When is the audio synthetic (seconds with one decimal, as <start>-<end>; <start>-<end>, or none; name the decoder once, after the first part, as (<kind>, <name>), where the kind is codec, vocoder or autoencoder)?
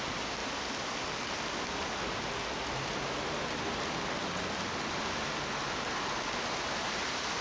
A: none